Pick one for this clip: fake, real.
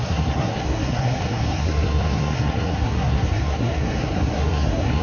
fake